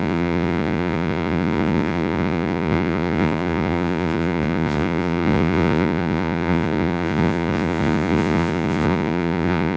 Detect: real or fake fake